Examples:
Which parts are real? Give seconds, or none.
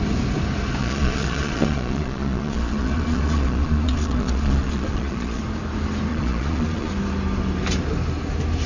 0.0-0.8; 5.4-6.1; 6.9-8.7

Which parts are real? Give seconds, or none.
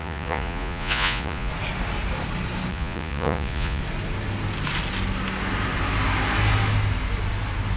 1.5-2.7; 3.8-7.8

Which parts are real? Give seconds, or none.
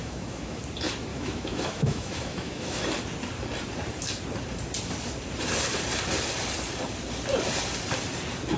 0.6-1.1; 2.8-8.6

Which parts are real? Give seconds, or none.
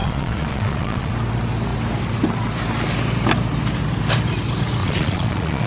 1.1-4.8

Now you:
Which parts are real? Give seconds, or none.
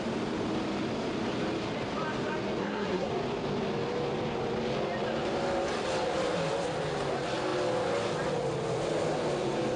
0.0-2.6; 3.1-9.8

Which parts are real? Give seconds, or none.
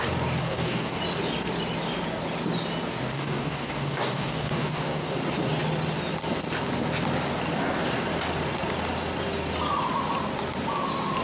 0.0-0.4; 1.0-3.1; 5.1-11.2